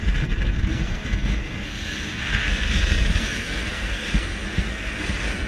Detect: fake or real fake